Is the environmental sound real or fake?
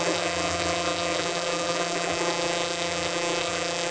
fake